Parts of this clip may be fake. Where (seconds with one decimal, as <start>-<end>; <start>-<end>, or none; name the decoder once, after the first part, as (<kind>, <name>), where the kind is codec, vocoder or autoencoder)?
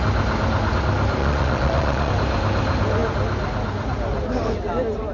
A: 1.2-2.1 (vocoder, Vocos)